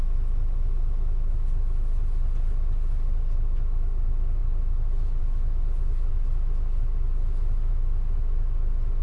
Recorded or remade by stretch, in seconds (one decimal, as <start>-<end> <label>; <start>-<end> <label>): 0.0-9.0 recorded